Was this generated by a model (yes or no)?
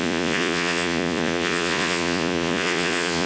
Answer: yes